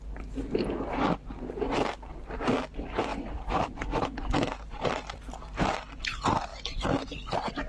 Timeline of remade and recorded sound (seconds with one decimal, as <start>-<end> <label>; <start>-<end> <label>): 0.0-3.1 recorded; 3.1-4.9 remade; 4.9-7.7 recorded